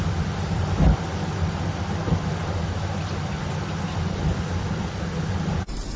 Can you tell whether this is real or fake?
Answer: real